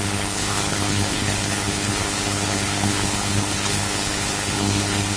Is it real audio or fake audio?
fake